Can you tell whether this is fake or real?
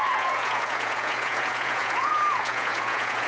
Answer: fake